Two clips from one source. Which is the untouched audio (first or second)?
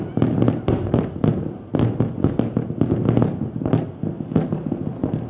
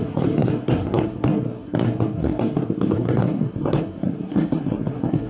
first